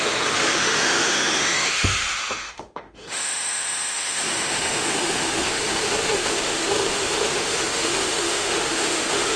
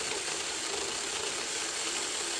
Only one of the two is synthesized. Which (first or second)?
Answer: first